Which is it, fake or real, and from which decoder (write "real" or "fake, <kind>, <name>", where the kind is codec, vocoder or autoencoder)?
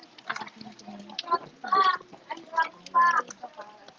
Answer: real